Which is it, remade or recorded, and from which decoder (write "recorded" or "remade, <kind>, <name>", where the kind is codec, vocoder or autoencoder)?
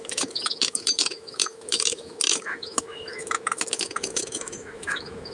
remade, autoencoder, DAC-VAE